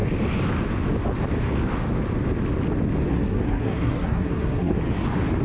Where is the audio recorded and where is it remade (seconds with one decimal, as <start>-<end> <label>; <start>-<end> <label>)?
0.0-3.1 recorded; 3.1-4.8 remade; 4.8-5.4 recorded